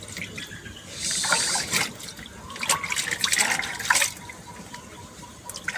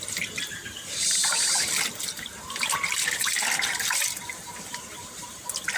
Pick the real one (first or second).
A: first